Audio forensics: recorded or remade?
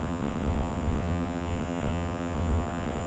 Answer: remade